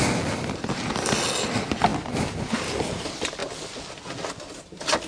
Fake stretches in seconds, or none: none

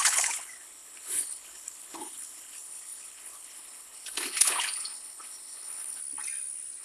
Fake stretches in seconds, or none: 0.0-6.0 (codec, HILCodec)

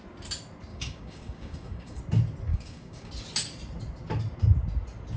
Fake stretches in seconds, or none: 0.7-2.0 (codec, DAC); 2.5-3.1

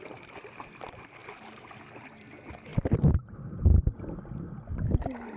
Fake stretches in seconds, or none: 1.2-1.7 (vocoder, BigVGAN v2); 2.7-4.7

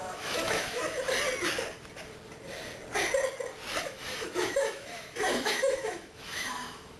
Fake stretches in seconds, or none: 0.0-0.8 (autoencoder, DAC-VAE); 3.8-7.0

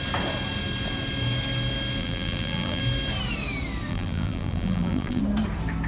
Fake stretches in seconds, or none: 2.0-2.8 (vocoder, BigVGAN v2); 3.9-5.2